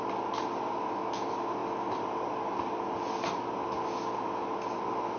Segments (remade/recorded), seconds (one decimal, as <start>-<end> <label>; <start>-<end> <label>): 0.0-5.2 recorded